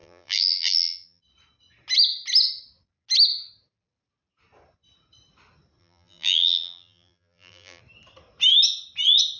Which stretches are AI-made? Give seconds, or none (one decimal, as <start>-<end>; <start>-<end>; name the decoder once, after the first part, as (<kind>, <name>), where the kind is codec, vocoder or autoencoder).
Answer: 0.0-1.2 (vocoder, BigVGAN v2); 5.8-7.8